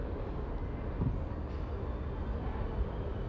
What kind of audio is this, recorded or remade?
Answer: recorded